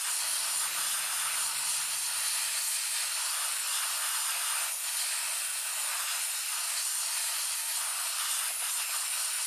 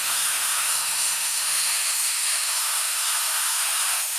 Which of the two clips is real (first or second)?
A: first